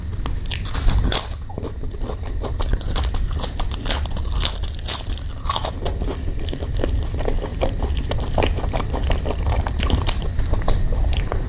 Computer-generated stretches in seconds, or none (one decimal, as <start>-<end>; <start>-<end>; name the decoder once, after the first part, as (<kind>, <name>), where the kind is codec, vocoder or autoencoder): none

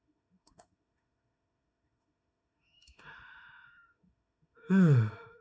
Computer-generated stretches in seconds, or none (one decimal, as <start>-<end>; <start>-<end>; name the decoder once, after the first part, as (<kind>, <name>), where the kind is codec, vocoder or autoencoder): 0.0-5.4 (autoencoder, DAC-VAE)